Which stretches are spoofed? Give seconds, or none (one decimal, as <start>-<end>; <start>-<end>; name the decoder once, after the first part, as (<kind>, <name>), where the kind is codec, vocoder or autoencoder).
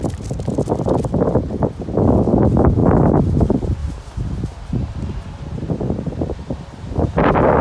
none